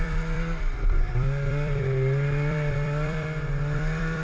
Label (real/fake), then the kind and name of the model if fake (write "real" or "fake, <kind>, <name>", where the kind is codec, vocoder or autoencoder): fake, vocoder, BigVGAN v2